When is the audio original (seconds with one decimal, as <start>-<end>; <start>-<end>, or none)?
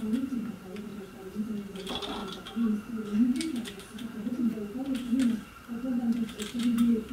0.0-7.1